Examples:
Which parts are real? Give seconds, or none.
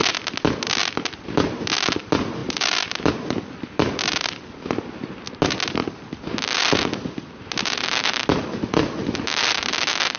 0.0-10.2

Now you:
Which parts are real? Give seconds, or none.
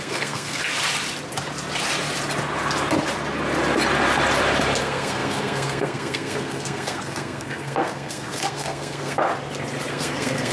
0.6-4.8; 9.3-9.9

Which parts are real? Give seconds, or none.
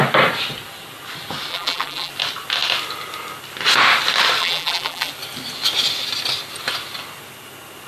0.0-1.5; 2.1-4.4; 5.1-7.9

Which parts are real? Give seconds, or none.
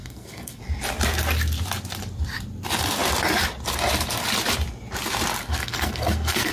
0.6-5.5